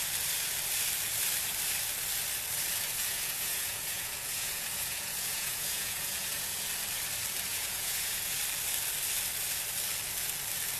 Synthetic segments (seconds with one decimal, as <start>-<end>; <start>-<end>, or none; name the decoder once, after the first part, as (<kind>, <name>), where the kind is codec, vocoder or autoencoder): 2.9-6.7 (vocoder, Vocos); 7.5-8.4